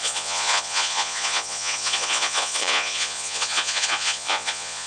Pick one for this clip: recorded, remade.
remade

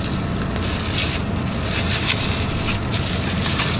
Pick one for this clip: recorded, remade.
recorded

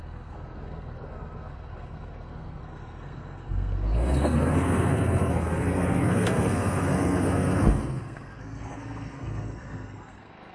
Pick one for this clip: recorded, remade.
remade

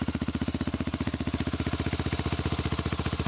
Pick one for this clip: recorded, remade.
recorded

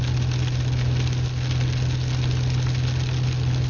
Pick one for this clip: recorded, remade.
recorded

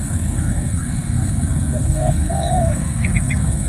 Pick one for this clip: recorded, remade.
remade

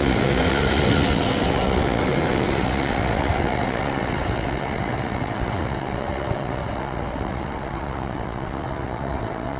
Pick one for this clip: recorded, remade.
remade